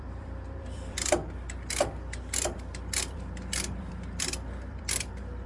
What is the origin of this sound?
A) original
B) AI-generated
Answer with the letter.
B